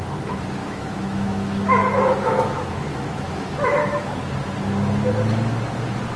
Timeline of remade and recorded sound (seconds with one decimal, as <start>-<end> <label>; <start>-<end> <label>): 0.0-0.6 recorded; 0.6-4.3 remade; 4.3-6.2 recorded